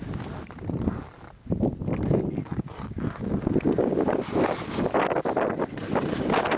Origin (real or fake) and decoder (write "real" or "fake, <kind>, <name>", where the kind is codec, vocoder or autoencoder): real